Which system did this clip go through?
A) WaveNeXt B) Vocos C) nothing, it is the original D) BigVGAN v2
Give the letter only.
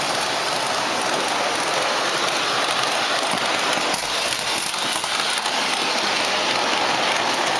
C